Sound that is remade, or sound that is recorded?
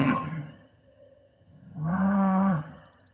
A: remade